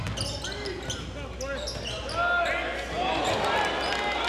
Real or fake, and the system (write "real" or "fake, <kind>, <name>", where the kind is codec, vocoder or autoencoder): real